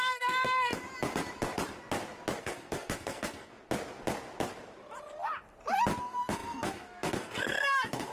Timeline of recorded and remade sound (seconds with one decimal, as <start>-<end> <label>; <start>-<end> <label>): 0.0-0.7 remade; 0.7-2.4 recorded; 2.4-3.5 remade; 3.5-6.0 recorded; 6.0-8.1 remade